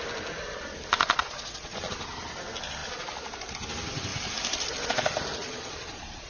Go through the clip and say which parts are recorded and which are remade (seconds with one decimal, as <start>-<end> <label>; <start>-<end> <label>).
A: 0.0-1.2 recorded; 1.2-1.9 remade; 1.9-5.4 recorded; 5.4-6.3 remade